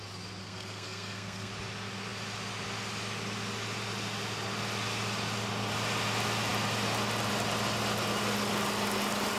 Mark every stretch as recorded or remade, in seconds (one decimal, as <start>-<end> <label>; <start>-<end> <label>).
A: 0.0-0.4 recorded; 0.4-1.5 remade; 1.5-9.4 recorded